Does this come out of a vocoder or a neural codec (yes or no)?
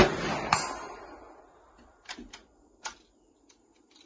no